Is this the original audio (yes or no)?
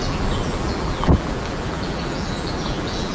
no